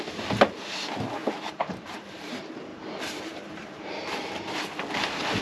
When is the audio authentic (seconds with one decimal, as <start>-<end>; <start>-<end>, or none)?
0.0-1.2; 2.3-2.7; 4.2-5.4